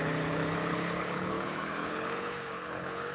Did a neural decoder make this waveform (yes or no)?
yes